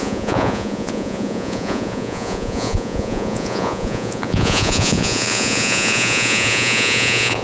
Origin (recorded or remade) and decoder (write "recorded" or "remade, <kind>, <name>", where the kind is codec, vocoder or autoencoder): remade, vocoder, Vocos